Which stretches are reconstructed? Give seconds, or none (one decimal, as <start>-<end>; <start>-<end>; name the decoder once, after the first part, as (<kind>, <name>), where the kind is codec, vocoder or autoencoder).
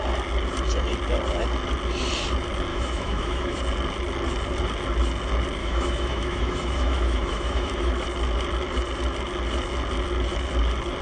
2.7-3.6 (autoencoder, DAC-VAE); 5.6-7.9